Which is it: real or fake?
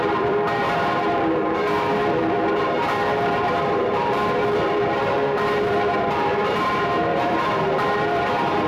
fake